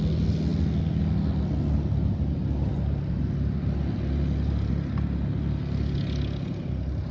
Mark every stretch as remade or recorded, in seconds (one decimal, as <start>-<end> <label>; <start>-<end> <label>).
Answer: 0.0-7.1 recorded